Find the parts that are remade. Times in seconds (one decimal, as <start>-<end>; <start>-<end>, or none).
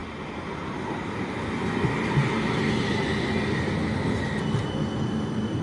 none